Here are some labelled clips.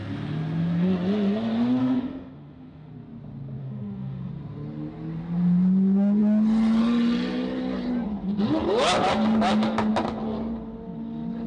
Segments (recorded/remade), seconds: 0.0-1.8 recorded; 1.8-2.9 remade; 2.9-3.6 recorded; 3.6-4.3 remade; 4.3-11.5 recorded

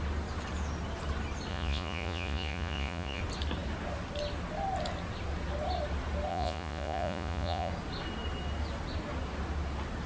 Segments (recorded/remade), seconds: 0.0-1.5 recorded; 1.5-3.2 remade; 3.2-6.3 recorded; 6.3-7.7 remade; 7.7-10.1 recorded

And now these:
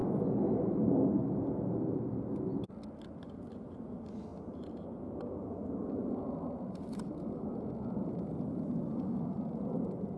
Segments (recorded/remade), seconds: 0.0-10.2 recorded

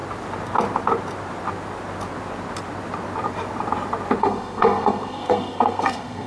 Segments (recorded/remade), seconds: 0.0-4.2 recorded; 4.2-6.3 remade